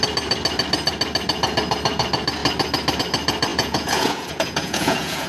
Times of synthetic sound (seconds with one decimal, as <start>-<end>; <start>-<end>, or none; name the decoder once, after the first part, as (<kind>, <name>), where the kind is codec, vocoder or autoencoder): 3.5-5.3 (vocoder, Vocos)